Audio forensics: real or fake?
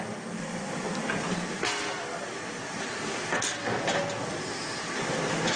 real